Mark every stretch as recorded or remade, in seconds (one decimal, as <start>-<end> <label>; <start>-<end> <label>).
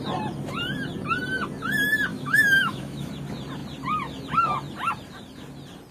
0.0-2.1 recorded; 2.1-3.1 remade; 3.1-5.9 recorded